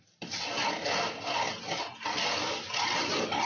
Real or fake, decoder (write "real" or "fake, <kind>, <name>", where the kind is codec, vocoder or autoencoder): real